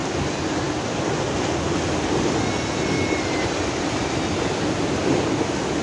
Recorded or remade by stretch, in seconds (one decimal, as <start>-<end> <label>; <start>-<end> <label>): 0.0-5.8 recorded